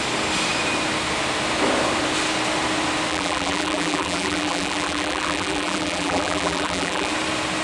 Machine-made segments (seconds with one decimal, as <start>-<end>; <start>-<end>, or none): 3.1-7.1